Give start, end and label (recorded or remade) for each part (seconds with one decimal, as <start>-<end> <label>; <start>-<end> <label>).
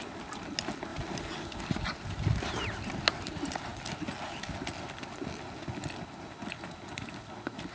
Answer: 0.0-7.7 recorded